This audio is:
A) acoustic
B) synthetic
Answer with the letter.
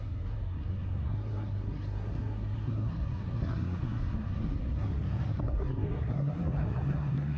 B